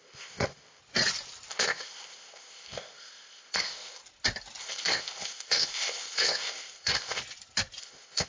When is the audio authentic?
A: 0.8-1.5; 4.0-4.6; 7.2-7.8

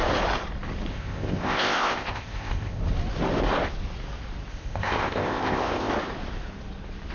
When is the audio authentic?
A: 0.0-0.9; 2.8-4.5; 5.9-7.1

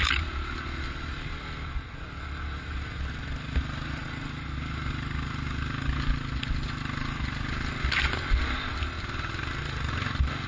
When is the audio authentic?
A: 0.0-10.5

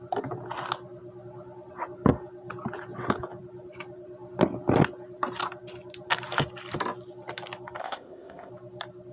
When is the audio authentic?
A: 0.0-7.8; 8.5-9.1

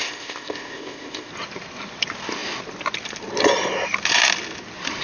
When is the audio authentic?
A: 1.3-5.0